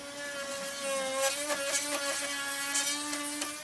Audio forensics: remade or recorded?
recorded